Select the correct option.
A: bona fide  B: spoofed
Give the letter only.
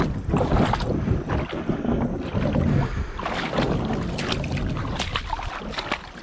A